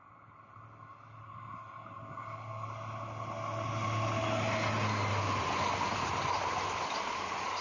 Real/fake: real